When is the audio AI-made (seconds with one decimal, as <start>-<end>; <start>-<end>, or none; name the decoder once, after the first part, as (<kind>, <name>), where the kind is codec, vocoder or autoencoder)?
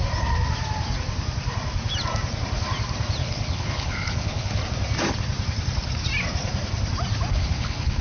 3.2-4.6 (codec, HILCodec); 7.3-8.0